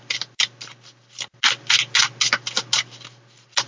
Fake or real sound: real